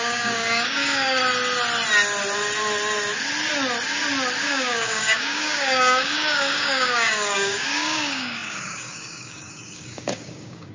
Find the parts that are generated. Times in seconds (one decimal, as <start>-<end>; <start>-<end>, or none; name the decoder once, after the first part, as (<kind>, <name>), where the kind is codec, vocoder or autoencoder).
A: 0.0-1.2 (codec, DAC); 4.4-10.7